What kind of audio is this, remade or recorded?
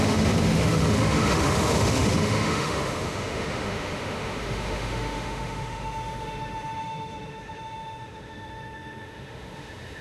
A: remade